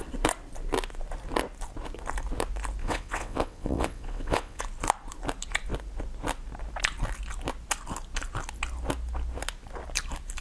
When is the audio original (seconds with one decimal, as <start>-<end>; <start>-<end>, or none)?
0.0-2.8; 4.6-10.4